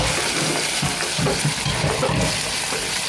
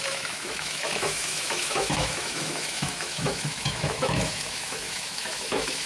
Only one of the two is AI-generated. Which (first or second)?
second